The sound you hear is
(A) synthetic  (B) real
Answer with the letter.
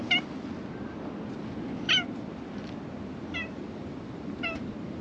B